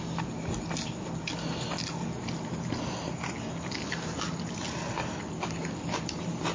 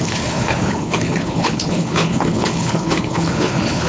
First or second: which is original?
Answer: first